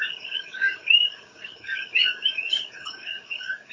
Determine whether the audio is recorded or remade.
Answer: remade